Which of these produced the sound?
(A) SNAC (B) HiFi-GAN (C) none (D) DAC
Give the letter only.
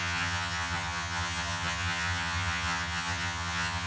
B